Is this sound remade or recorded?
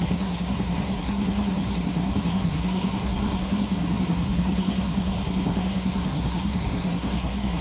remade